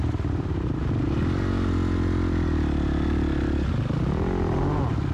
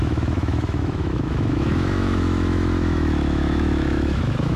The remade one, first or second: second